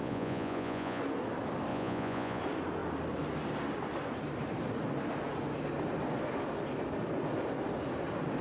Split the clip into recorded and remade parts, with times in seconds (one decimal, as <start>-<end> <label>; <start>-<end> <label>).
0.0-1.0 remade; 1.0-1.7 recorded; 1.7-2.4 remade; 2.4-8.4 recorded